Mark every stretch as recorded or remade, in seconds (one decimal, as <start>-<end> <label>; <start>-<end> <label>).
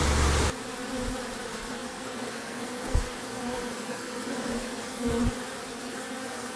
0.0-1.5 recorded; 1.5-5.2 remade; 5.2-5.7 recorded; 5.7-6.6 remade